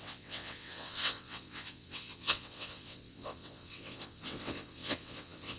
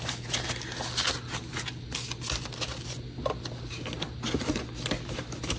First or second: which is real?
second